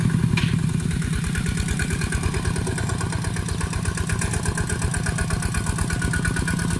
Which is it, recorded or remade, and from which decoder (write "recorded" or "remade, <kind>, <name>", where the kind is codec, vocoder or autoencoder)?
recorded